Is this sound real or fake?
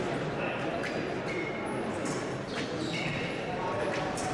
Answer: real